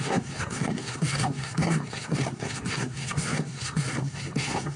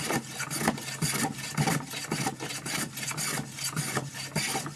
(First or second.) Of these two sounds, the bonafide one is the second